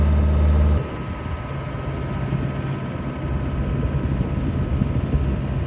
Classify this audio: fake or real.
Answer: real